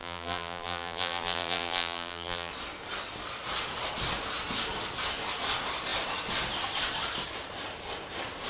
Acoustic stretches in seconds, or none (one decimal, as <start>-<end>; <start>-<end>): 2.5-8.5